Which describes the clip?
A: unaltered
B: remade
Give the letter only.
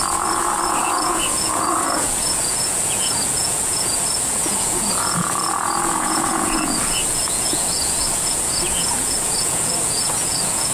B